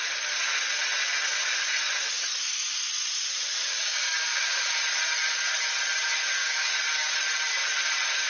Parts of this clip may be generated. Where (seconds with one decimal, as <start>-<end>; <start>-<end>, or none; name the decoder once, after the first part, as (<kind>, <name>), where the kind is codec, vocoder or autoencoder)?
3.7-4.6 (codec, DAC); 6.4-7.1